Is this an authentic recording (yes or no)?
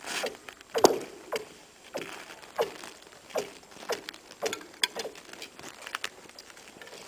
yes